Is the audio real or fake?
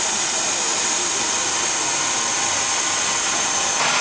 real